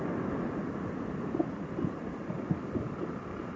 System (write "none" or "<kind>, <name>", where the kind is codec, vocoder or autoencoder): none